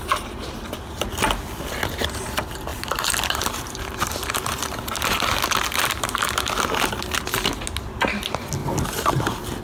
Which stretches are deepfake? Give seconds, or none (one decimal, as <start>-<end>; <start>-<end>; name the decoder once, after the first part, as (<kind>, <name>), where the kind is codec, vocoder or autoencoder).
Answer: 2.7-5.3 (vocoder, BigVGAN v2); 8.6-9.6